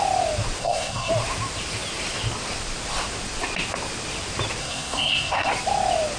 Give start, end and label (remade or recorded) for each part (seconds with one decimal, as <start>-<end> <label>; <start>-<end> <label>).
0.0-0.6 recorded; 0.6-1.1 remade; 1.1-4.6 recorded; 4.6-5.5 remade; 5.5-6.2 recorded